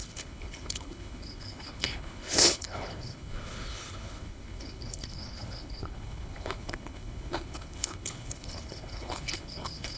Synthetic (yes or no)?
yes